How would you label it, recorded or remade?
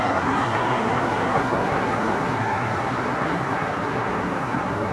remade